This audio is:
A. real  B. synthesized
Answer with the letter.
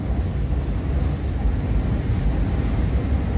A